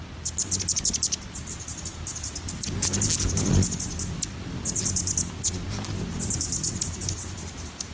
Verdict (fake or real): real